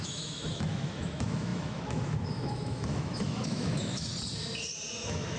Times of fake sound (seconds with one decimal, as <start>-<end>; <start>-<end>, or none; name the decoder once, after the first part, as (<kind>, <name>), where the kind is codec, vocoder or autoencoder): 0.0-4.1 (autoencoder, DAC-VAE); 4.9-5.4